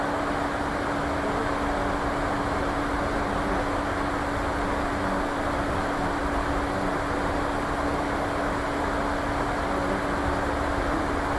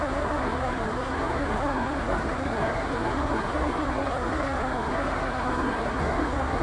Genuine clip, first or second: first